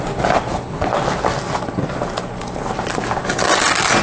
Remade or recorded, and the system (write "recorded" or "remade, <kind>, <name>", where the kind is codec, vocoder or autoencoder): recorded